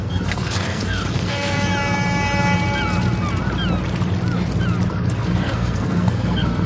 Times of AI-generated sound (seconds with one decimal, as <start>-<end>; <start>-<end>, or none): 0.0-1.7; 4.9-6.7